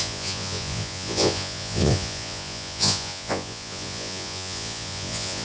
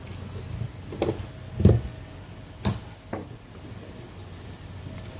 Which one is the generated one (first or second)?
first